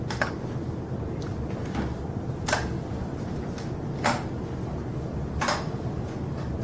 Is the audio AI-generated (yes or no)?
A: no